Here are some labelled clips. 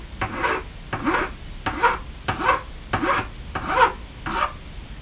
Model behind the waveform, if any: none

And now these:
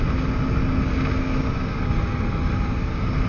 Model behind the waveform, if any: none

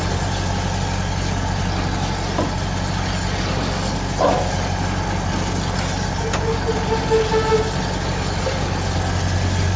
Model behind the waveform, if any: none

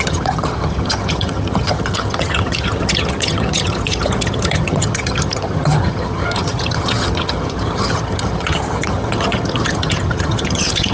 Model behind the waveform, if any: vocoder, HiFi-GAN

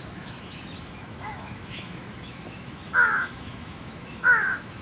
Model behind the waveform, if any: autoencoder, DAC-VAE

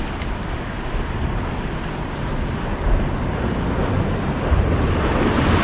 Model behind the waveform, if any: none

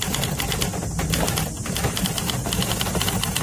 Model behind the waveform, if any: none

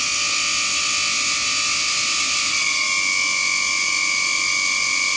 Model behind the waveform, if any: none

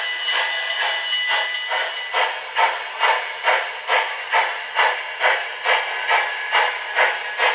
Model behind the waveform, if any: none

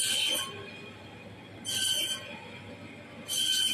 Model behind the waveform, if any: none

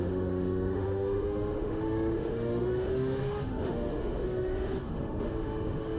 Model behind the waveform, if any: autoencoder, DAC-VAE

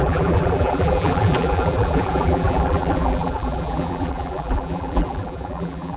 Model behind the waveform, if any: vocoder, BigVGAN v2